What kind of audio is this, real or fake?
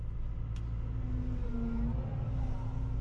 real